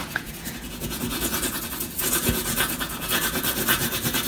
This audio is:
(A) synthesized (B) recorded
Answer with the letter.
A